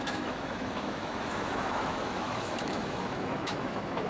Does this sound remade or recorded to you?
remade